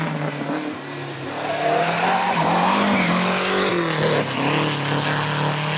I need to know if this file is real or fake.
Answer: real